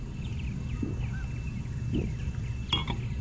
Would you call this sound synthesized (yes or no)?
no